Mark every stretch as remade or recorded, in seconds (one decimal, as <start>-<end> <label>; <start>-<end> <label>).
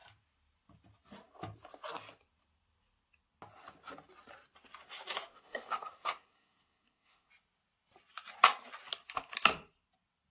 0.0-5.3 recorded; 5.3-7.3 remade; 7.3-10.3 recorded